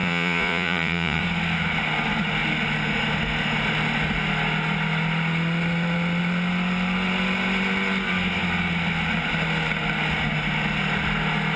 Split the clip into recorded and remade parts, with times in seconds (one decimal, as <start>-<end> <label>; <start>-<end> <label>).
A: 0.0-1.2 remade; 1.2-11.6 recorded